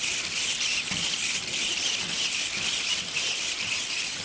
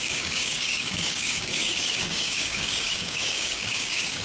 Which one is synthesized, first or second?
second